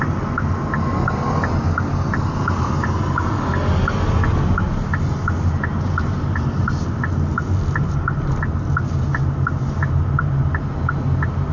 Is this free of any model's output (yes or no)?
yes